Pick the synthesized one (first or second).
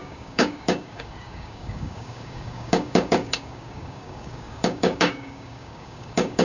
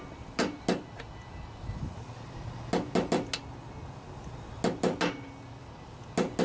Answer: first